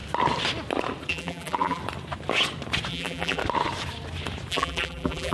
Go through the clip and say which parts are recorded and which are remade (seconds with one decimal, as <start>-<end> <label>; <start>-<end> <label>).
0.0-1.1 recorded; 1.1-1.8 remade; 1.8-2.9 recorded; 2.9-3.4 remade; 3.4-4.5 recorded; 4.5-5.3 remade